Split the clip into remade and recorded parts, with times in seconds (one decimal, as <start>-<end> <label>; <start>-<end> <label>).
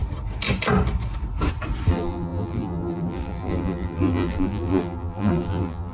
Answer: 0.0-1.9 recorded; 1.9-5.9 remade